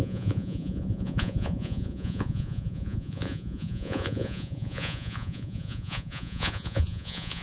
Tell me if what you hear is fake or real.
fake